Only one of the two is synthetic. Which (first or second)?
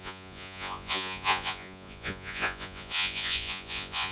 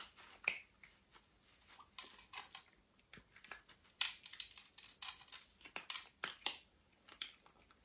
first